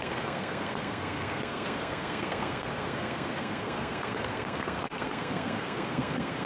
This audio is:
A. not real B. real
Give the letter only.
A